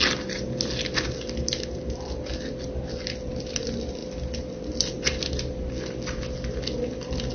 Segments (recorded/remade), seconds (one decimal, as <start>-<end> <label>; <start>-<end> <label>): 0.0-7.3 recorded